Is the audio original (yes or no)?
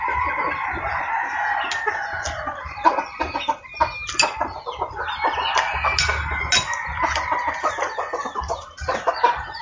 yes